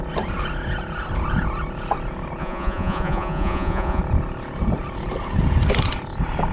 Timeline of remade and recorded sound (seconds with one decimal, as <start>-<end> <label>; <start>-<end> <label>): 0.0-2.4 recorded; 2.4-4.0 remade; 4.0-6.5 recorded